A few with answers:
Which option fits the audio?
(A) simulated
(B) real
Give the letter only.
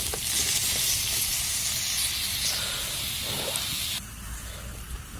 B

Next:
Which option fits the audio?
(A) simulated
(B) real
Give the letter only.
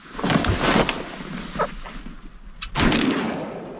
B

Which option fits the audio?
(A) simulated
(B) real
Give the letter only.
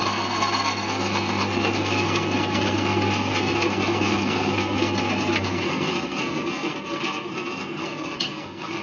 A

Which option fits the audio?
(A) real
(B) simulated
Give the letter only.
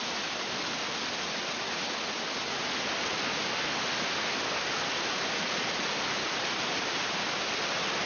A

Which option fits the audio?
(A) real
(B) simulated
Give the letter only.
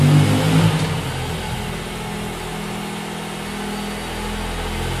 A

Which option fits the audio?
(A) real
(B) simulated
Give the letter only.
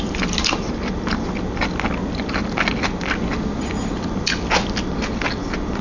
A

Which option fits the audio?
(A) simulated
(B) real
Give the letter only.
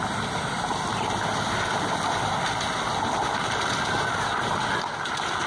B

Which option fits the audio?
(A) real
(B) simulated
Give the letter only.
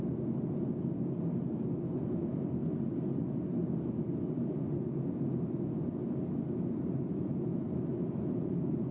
A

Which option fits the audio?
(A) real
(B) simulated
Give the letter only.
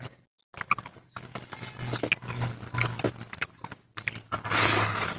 A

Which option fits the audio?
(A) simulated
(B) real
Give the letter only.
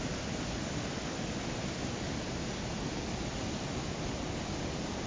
B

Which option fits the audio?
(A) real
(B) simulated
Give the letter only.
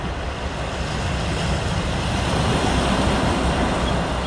A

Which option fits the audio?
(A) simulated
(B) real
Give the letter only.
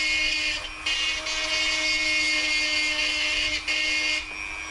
B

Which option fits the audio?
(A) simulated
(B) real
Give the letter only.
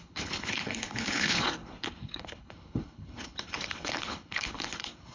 A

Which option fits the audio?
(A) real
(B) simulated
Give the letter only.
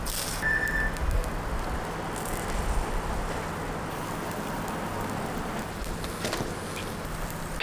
A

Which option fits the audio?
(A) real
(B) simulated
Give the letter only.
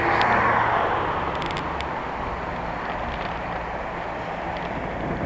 A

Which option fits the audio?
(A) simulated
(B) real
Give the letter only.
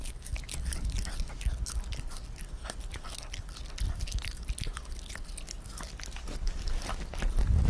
B